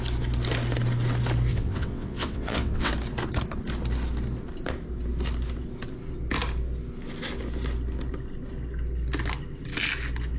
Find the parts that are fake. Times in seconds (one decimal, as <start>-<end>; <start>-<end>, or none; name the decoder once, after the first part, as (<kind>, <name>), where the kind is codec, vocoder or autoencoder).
1.5-2.9 (vocoder, WaveNeXt)